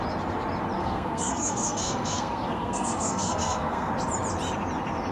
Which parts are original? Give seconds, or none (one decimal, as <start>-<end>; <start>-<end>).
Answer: 0.0-0.8; 3.9-5.1